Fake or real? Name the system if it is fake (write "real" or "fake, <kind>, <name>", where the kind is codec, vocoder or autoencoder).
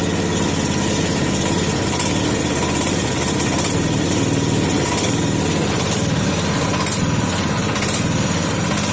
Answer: real